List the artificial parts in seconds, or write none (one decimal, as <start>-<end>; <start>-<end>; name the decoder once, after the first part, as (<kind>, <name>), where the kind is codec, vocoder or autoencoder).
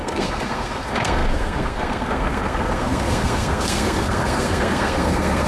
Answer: 0.0-5.5 (codec, SNAC)